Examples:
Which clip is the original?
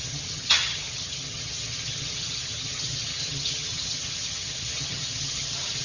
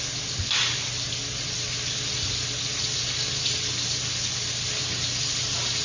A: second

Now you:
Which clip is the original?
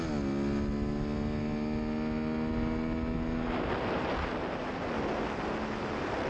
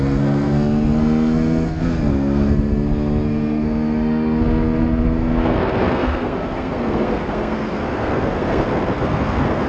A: first